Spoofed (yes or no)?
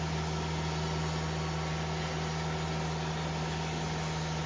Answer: no